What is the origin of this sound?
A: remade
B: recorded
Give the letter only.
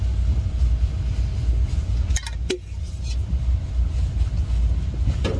B